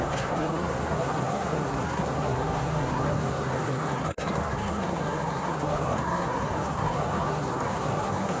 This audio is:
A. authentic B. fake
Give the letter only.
B